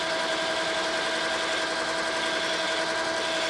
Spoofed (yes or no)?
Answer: no